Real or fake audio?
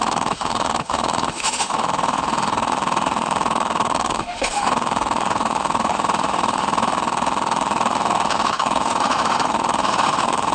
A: fake